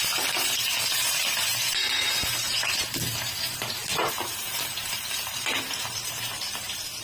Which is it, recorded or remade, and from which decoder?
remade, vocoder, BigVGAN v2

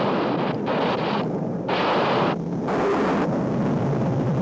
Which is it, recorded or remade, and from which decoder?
recorded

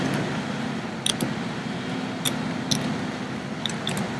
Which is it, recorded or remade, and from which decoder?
recorded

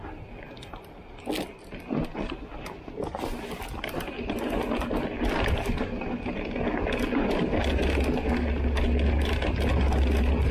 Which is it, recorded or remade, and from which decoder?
recorded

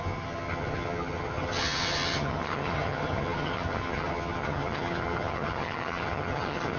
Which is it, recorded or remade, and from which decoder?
remade, vocoder, HiFi-GAN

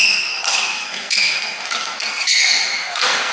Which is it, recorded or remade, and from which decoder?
remade, codec, SNAC